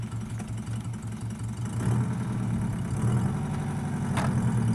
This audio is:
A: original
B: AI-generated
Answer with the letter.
A